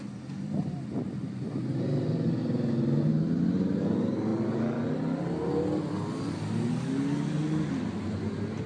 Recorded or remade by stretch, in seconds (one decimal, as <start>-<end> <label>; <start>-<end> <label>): 0.0-8.7 recorded